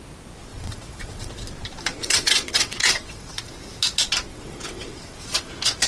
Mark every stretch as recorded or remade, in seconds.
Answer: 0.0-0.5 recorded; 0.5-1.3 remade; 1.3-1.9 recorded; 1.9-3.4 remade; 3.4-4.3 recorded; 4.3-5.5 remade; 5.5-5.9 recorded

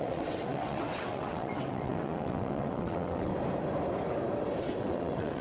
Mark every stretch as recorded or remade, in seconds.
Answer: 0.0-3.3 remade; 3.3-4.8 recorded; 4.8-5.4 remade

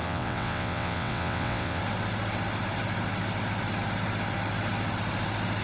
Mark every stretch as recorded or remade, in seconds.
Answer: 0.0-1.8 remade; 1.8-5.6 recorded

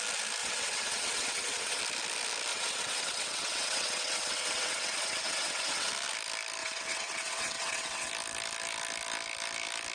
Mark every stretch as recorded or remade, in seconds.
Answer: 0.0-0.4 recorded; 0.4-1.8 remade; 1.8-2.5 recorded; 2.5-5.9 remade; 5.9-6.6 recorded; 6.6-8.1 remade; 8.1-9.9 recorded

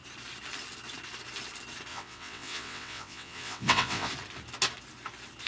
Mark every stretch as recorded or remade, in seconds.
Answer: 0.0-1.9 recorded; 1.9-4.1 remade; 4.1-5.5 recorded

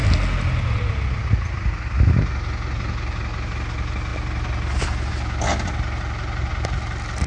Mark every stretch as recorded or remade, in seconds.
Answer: 0.0-7.3 recorded